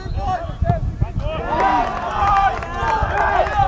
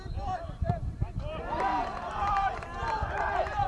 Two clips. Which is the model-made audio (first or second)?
second